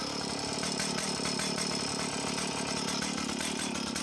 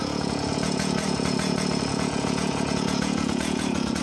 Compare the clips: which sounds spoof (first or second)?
second